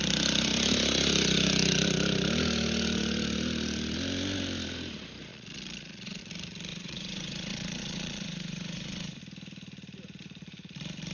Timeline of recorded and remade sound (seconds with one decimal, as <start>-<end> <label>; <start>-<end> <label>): 0.0-5.3 recorded; 5.3-6.2 remade; 6.2-6.7 recorded; 6.7-9.2 remade; 9.2-11.1 recorded